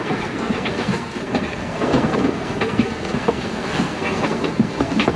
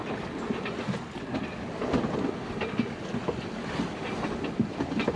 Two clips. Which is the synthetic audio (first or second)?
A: first